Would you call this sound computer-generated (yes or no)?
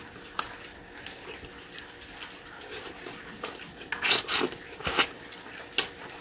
no